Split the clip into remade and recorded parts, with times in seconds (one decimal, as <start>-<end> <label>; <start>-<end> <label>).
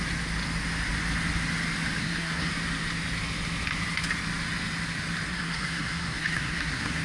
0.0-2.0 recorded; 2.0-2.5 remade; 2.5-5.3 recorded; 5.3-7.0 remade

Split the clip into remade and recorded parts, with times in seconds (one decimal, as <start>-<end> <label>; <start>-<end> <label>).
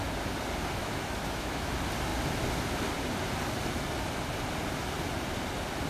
0.0-0.8 recorded; 0.8-1.7 remade; 1.7-5.9 recorded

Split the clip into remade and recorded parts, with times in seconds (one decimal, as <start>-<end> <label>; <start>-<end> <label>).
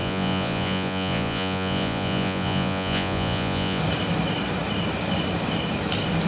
0.0-3.8 remade; 3.8-6.3 recorded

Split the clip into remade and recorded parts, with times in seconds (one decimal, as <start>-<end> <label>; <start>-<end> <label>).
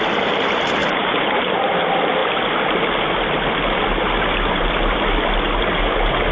0.0-0.8 recorded; 0.8-1.6 remade; 1.6-6.3 recorded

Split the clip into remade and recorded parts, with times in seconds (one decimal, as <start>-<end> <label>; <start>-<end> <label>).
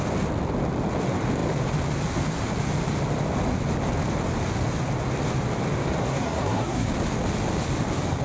0.0-6.0 recorded; 6.0-6.9 remade; 6.9-8.2 recorded